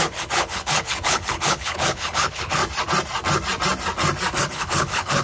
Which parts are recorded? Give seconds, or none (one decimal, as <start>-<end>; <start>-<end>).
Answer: 2.6-4.4